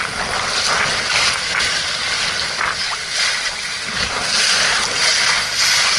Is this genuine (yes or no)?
yes